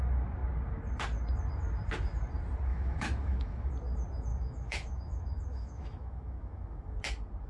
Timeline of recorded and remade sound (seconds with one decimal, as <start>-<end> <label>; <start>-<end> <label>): 0.0-2.7 recorded; 2.7-3.7 remade; 3.7-4.3 recorded; 4.3-7.0 remade; 7.0-7.5 recorded